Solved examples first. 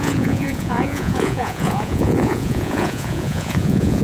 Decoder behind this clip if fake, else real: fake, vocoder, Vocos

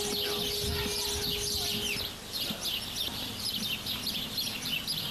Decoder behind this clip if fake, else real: real